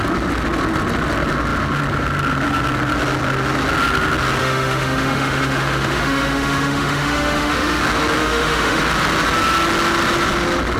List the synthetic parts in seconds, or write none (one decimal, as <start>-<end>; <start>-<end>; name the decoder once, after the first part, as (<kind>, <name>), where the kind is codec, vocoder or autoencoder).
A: 4.4-7.8 (autoencoder, DAC-VAE); 8.2-8.8